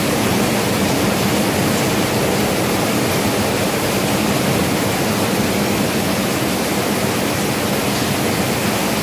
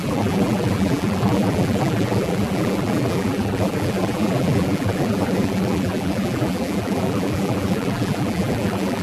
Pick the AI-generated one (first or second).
second